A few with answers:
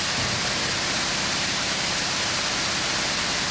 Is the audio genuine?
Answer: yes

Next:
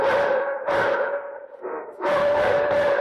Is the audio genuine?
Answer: no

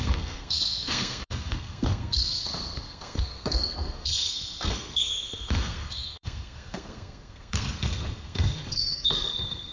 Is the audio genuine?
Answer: no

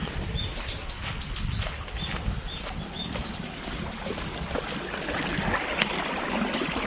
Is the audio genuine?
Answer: yes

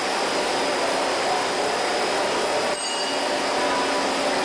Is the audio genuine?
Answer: yes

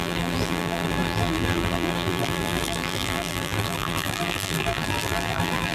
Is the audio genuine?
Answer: no